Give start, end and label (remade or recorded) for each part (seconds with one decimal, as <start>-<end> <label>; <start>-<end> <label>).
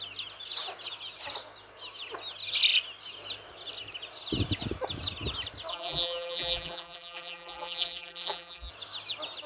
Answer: 0.0-5.7 recorded; 5.7-8.7 remade; 8.7-9.5 recorded